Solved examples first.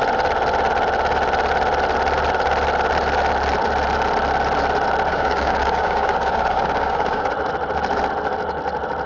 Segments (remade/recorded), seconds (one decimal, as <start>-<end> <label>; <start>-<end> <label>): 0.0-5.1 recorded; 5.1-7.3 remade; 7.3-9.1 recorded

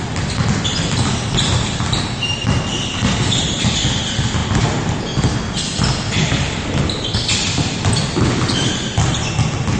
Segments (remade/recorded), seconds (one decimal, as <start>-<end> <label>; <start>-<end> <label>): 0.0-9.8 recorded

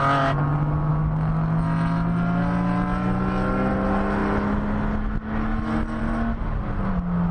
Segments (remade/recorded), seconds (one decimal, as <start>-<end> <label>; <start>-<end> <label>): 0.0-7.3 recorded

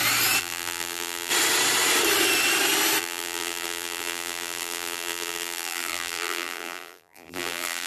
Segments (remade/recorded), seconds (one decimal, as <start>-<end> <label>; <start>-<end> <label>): 0.0-0.4 recorded; 0.4-1.3 remade; 1.3-3.0 recorded; 3.0-7.9 remade

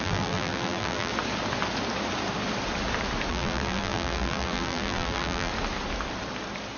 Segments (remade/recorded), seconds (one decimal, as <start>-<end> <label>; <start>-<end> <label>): 0.0-1.1 remade; 1.1-3.3 recorded; 3.3-5.5 remade; 5.5-6.8 recorded

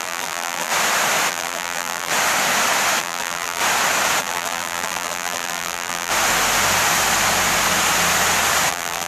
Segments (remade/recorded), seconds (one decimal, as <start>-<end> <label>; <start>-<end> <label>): 0.0-0.7 remade; 0.7-1.3 recorded; 1.3-2.1 remade; 2.1-3.0 recorded; 3.0-3.6 remade; 3.6-4.2 recorded; 4.2-6.1 remade; 6.1-8.7 recorded; 8.7-9.1 remade

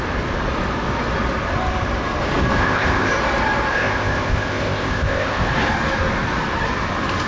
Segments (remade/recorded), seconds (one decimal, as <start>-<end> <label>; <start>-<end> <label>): 0.0-2.6 recorded; 2.6-3.1 remade; 3.1-3.7 recorded; 3.7-5.5 remade; 5.5-7.3 recorded